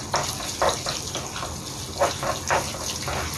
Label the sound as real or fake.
real